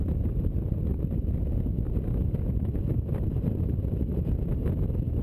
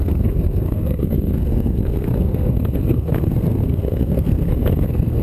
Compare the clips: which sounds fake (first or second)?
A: second